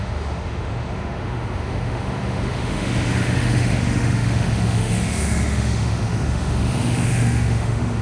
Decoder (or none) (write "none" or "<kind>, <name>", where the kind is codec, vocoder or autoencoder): autoencoder, DAC-VAE